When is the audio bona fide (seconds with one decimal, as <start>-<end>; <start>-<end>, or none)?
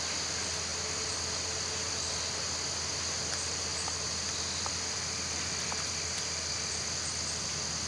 0.0-7.9